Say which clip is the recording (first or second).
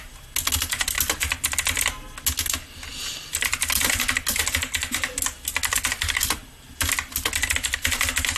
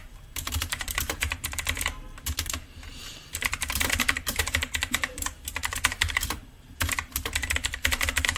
first